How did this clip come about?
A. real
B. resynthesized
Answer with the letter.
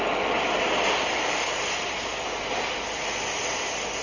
A